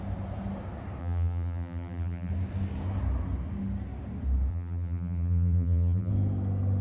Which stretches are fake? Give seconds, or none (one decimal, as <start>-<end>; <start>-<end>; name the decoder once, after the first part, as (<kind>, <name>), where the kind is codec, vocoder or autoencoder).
1.0-2.3 (vocoder, BigVGAN v2); 4.5-6.1